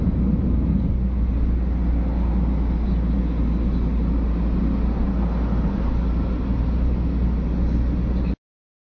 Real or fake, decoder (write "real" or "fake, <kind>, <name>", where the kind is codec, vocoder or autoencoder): real